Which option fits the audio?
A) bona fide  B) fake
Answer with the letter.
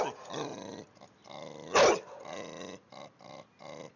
A